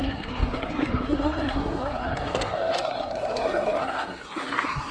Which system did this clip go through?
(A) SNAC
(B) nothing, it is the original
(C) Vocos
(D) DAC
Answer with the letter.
A